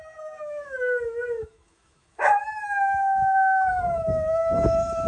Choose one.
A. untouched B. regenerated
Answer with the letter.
B